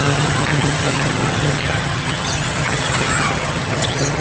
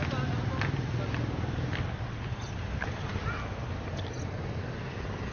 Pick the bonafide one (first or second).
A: second